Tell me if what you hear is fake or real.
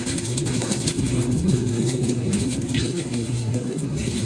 fake